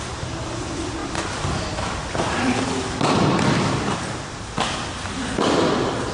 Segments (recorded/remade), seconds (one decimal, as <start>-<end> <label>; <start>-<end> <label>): 0.0-6.1 recorded